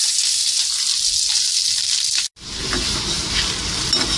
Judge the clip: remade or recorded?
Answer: recorded